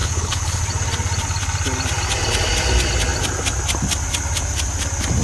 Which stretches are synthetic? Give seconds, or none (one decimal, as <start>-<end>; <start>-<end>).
0.0-0.6